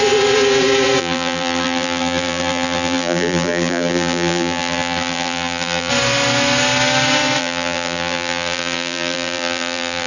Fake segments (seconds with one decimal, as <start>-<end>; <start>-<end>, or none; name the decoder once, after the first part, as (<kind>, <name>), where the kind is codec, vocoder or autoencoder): 1.0-5.9 (vocoder, BigVGAN v2); 7.4-10.1